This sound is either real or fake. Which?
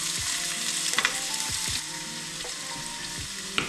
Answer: real